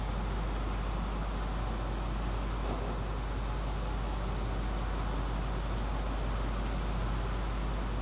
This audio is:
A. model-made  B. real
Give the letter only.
B